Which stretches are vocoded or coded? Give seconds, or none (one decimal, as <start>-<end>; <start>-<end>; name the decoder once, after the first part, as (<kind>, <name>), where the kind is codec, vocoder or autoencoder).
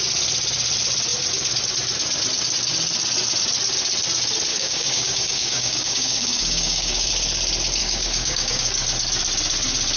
4.5-7.1 (codec, DAC); 7.8-8.7